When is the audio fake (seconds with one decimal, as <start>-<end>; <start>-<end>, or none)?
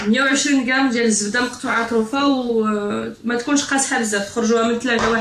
1.6-2.5